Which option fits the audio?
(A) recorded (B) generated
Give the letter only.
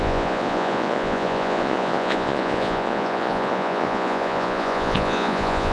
B